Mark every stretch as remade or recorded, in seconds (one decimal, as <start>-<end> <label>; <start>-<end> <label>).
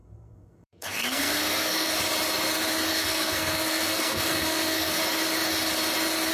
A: 0.0-1.9 remade; 1.9-2.9 recorded; 2.9-5.0 remade; 5.0-6.3 recorded